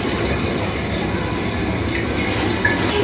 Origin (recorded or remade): recorded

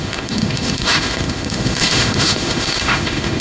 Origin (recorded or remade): remade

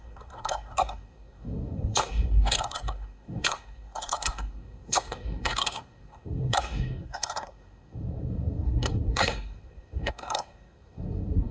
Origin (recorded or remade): remade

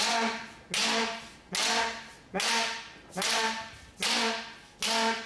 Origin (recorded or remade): recorded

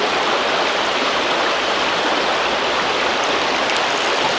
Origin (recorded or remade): recorded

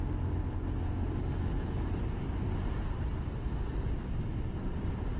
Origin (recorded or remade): recorded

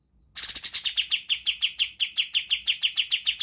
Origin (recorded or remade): recorded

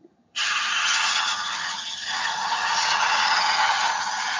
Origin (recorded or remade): remade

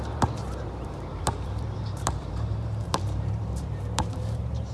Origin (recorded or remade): remade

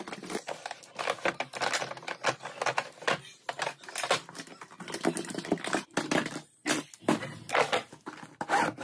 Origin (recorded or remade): recorded